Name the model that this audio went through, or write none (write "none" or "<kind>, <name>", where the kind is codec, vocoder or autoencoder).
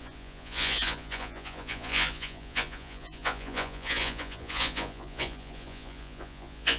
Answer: vocoder, Vocos